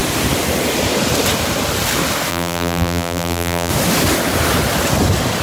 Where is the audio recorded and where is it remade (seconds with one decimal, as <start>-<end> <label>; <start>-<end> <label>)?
0.0-2.3 recorded; 2.3-3.7 remade; 3.7-5.4 recorded